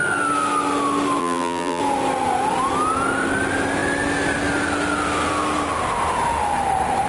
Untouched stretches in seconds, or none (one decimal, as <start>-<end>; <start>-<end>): 0.0-1.2; 1.8-7.1